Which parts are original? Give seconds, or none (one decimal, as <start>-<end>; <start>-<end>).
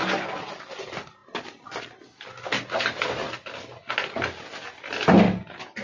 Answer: 0.0-5.8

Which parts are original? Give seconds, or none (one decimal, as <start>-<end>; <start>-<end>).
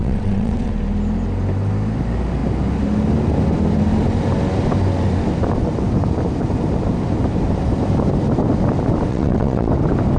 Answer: 0.7-9.1; 9.7-10.2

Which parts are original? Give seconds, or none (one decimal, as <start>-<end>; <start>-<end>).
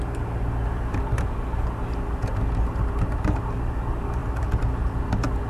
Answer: 0.0-4.2; 5.0-5.5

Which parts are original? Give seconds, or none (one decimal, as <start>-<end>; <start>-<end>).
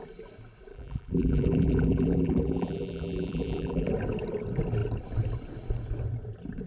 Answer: 0.0-0.7; 3.9-6.7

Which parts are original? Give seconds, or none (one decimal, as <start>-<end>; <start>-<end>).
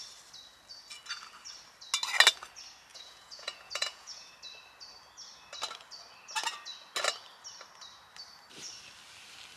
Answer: 0.0-2.9; 4.3-9.6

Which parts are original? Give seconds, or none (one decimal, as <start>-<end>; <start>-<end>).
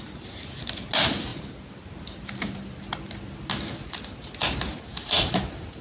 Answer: 0.0-4.7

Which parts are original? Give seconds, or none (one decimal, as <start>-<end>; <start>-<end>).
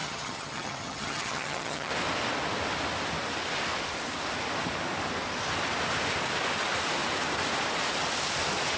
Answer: 1.9-8.8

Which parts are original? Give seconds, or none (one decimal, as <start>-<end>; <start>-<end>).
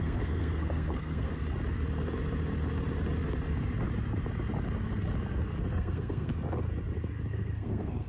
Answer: 1.4-5.7; 6.3-7.3